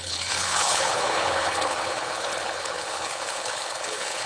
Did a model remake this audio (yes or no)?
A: yes